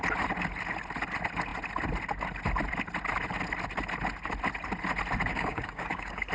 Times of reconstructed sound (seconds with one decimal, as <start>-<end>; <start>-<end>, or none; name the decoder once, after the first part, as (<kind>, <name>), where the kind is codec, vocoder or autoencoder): 5.3-6.3 (codec, DAC)